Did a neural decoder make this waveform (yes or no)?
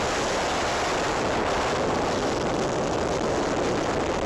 no